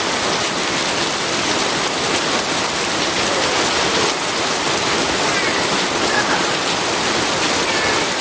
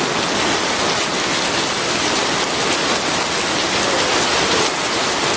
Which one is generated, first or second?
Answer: first